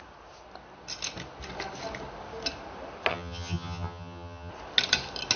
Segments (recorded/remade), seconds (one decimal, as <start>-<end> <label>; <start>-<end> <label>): 0.0-3.1 recorded; 3.1-4.5 remade; 4.5-5.4 recorded